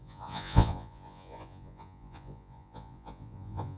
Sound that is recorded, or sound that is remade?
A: remade